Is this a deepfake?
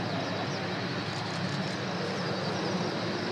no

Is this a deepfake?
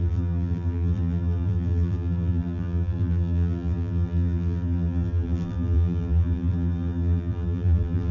yes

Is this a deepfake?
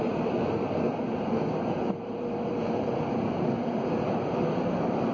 yes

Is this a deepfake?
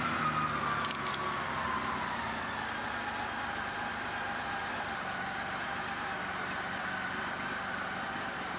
no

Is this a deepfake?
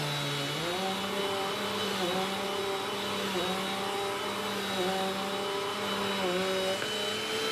no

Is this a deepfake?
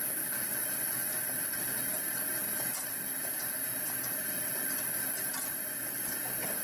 no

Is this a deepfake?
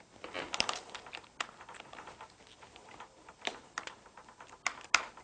no